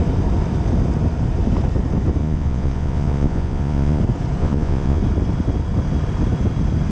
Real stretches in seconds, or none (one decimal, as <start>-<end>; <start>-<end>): 0.0-2.2; 4.0-4.4; 5.0-6.9